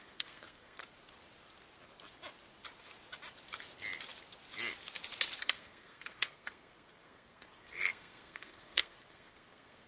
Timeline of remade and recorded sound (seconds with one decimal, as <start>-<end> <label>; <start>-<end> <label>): 0.0-0.8 remade; 0.8-5.4 recorded; 5.4-9.9 remade

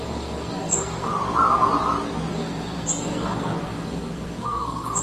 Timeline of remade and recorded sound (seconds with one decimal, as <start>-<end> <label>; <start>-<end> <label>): 0.0-1.1 remade; 1.1-2.3 recorded; 2.3-5.0 remade

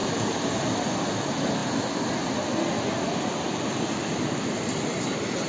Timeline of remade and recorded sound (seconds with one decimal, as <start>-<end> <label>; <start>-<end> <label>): 0.0-5.5 recorded

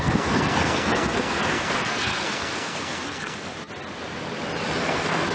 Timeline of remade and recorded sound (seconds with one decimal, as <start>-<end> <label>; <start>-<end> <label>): 0.0-3.5 remade; 3.5-4.8 recorded; 4.8-5.3 remade

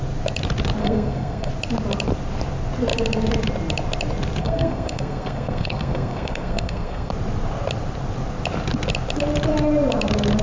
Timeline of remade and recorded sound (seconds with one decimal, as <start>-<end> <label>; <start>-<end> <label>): 0.0-0.8 recorded; 0.8-1.5 remade; 1.5-4.4 recorded; 4.4-7.1 remade; 7.1-10.4 recorded

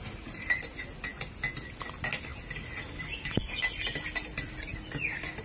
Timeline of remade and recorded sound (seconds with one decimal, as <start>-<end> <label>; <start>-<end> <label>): 0.0-5.4 recorded

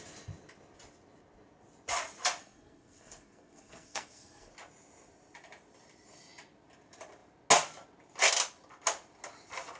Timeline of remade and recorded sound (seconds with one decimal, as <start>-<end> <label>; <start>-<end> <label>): 0.0-2.4 recorded; 2.4-4.5 remade; 4.5-9.8 recorded